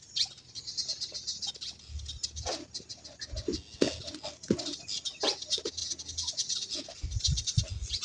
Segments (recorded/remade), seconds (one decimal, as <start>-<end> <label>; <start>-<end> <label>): 0.0-8.0 recorded

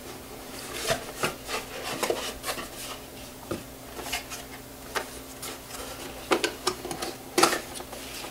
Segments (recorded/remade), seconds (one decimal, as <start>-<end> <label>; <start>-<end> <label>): 0.0-1.1 remade; 1.1-3.1 recorded; 3.1-3.6 remade; 3.6-8.3 recorded

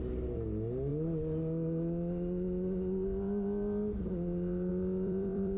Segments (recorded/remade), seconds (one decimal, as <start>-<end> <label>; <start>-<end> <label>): 0.0-4.7 recorded; 4.7-5.6 remade